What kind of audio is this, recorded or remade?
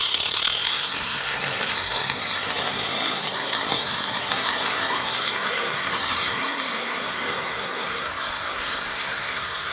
remade